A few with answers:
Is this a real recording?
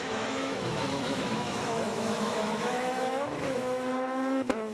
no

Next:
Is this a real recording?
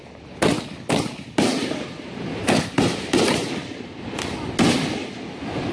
yes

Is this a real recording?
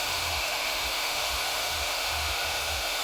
no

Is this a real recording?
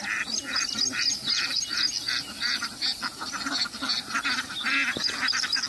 yes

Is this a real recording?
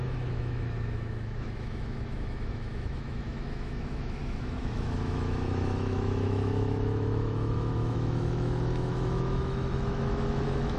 no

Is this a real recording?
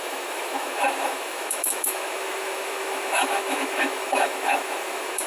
no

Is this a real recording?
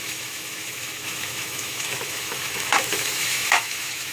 no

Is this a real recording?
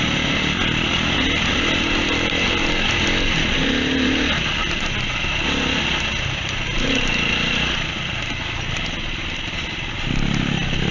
yes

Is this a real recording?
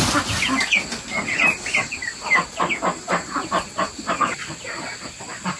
yes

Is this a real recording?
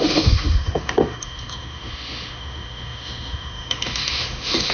no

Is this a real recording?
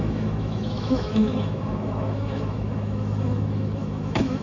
no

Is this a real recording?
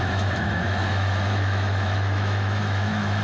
no